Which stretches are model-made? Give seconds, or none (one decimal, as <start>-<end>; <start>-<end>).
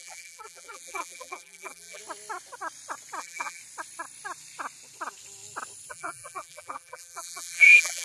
0.0-2.0; 3.2-3.6; 5.9-8.0